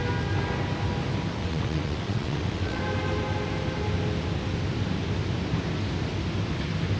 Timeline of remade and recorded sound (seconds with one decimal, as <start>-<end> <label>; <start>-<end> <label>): 0.0-1.4 recorded; 1.4-2.8 remade; 2.8-7.0 recorded